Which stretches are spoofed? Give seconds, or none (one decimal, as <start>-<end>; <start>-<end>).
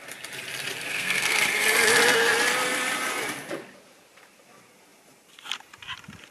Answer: 0.9-1.4